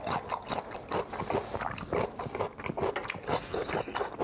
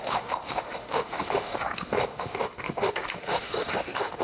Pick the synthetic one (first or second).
second